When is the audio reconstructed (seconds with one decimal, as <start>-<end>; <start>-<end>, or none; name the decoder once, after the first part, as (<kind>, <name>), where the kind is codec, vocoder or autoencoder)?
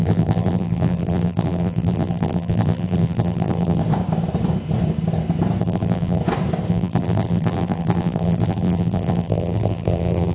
0.0-3.8 (vocoder, BigVGAN v2); 5.6-6.2; 6.7-10.3